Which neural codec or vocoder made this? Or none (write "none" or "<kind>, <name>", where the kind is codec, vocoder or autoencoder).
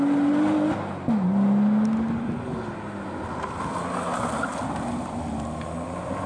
none